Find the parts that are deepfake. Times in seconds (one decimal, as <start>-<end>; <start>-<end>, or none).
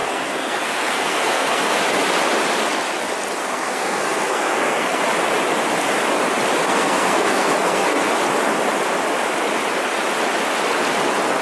0.0-1.8; 3.4-5.0; 6.6-8.1